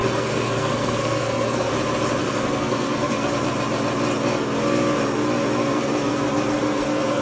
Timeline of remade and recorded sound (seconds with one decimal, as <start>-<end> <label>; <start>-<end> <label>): 0.0-1.7 remade; 1.7-2.2 recorded; 2.2-3.3 remade; 3.3-5.6 recorded; 5.6-7.2 remade